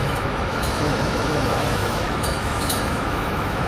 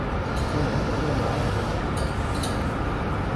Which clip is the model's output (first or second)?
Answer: first